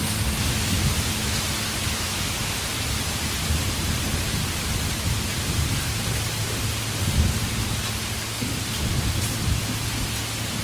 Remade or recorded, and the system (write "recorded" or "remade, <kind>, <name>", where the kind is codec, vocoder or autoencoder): recorded